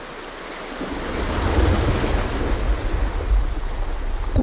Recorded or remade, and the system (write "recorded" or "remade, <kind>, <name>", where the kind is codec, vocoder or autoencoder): recorded